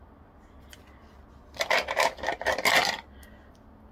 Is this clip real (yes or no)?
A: yes